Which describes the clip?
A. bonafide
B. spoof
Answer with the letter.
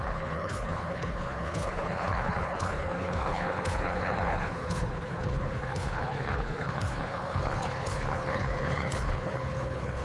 B